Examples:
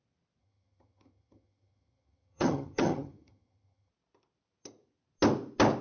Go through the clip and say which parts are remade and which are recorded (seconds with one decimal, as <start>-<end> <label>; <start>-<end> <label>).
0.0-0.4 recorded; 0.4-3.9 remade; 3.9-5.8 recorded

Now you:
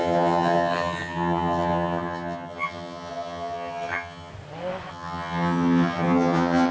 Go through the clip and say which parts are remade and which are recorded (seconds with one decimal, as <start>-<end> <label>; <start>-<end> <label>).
0.0-4.3 remade; 4.3-4.9 recorded; 4.9-6.7 remade

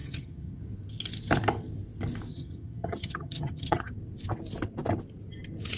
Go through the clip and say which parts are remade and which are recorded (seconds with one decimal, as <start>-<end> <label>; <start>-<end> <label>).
0.0-0.6 remade; 0.6-2.3 recorded; 2.3-3.9 remade; 3.9-5.8 recorded

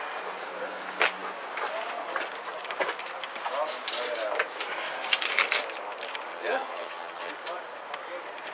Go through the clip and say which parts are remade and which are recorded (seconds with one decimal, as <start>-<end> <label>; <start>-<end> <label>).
0.0-6.3 recorded; 6.3-7.3 remade; 7.3-8.5 recorded

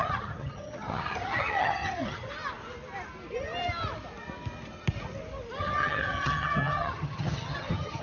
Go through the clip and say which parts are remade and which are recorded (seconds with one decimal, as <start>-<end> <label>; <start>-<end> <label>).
0.0-2.3 remade; 2.3-5.6 recorded; 5.6-8.0 remade

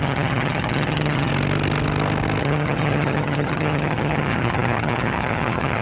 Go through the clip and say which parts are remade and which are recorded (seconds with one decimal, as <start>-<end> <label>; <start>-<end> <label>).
0.0-1.3 remade; 1.3-2.4 recorded; 2.4-5.8 remade